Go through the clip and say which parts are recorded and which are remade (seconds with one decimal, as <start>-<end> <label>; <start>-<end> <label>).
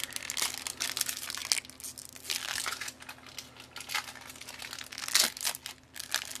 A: 0.0-6.4 recorded